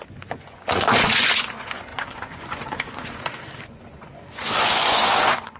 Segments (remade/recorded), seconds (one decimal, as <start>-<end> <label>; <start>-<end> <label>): 0.0-5.6 remade